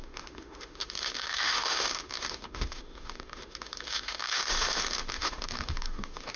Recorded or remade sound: remade